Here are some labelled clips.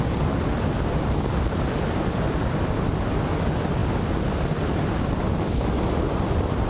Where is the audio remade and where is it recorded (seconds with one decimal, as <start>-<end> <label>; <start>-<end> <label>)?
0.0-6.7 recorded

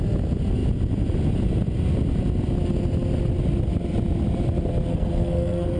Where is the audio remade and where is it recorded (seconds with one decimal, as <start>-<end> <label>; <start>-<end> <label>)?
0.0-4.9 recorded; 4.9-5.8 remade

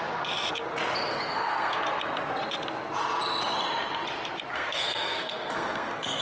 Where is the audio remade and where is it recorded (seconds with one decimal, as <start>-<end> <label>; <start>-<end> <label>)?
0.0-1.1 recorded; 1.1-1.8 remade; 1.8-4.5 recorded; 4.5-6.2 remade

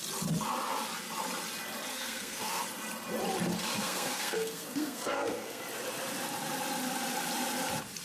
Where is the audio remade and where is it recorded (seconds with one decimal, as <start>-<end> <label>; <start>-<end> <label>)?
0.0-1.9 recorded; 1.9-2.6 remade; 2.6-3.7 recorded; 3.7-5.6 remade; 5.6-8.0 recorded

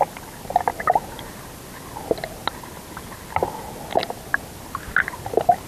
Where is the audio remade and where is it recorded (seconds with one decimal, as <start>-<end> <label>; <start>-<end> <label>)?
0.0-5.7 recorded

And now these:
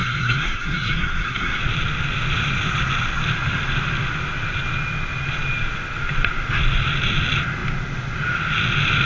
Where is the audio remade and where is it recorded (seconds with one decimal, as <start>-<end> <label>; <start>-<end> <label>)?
0.0-1.6 remade; 1.6-9.1 recorded

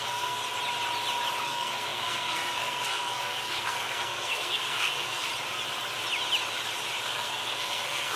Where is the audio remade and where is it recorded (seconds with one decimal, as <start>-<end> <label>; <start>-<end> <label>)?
0.0-0.4 remade; 0.4-1.4 recorded; 1.4-5.3 remade; 5.3-7.0 recorded; 7.0-8.2 remade

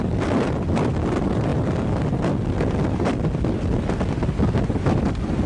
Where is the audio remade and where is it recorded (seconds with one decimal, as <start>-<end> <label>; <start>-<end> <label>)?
0.0-5.5 recorded